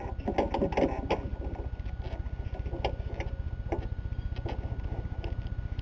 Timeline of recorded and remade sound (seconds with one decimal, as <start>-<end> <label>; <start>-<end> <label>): 0.0-5.8 recorded